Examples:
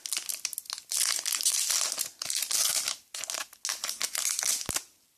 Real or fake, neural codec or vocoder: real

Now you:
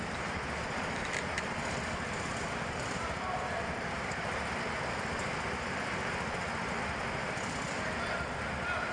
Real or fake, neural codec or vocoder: fake, vocoder, BigVGAN v2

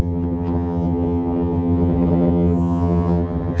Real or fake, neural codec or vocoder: fake, vocoder, HiFi-GAN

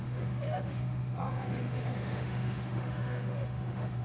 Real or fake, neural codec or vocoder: fake, autoencoder, DAC-VAE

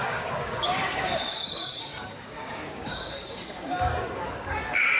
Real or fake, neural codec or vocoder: fake, codec, DAC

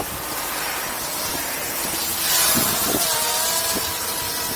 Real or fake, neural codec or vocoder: real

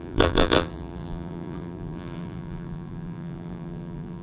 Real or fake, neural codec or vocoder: fake, vocoder, BigVGAN v2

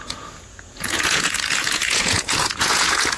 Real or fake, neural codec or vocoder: fake, vocoder, Vocos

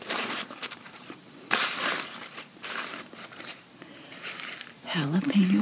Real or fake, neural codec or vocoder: fake, vocoder, BigVGAN v2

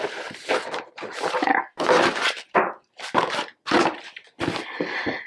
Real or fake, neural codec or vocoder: real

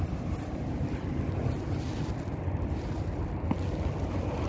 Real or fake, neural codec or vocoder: fake, vocoder, BigVGAN v2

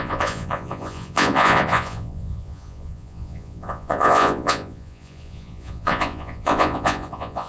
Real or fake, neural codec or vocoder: fake, vocoder, Vocos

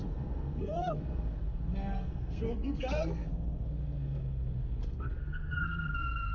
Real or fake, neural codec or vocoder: fake, codec, SNAC